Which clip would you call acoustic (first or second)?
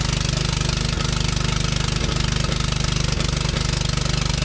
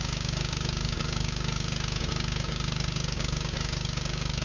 first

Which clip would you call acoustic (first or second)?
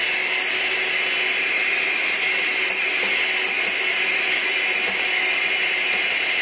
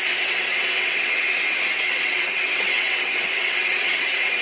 first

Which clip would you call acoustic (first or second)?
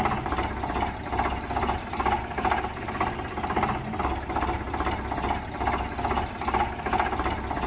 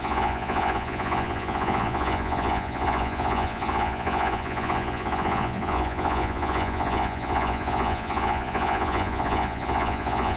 first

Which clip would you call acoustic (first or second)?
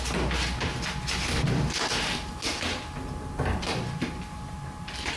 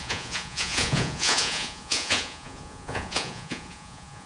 first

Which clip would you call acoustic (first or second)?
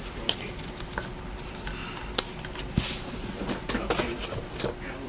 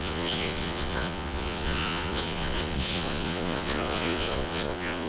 first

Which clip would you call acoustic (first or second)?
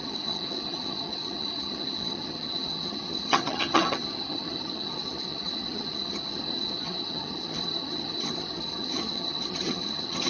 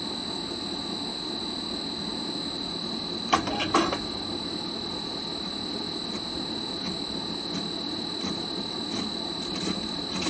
second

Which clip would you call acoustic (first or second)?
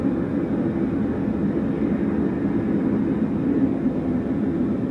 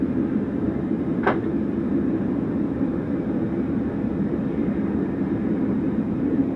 first